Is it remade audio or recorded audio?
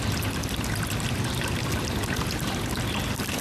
recorded